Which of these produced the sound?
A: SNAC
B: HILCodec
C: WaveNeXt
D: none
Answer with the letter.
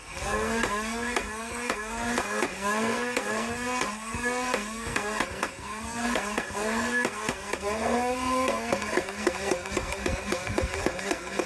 A